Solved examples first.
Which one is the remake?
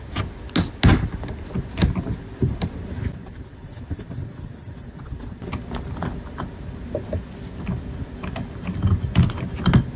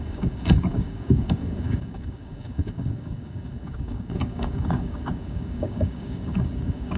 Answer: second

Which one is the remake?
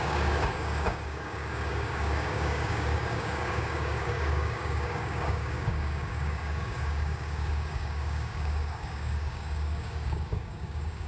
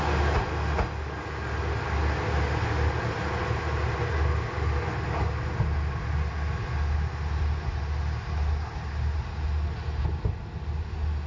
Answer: first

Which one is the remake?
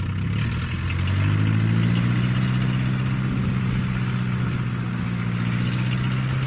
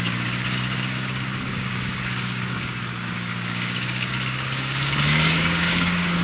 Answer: second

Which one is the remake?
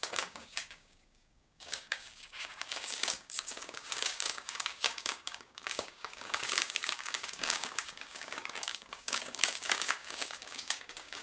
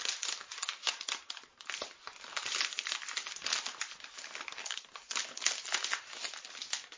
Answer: first